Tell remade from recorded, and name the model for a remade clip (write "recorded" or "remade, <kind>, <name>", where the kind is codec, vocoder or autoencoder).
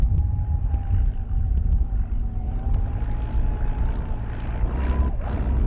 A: recorded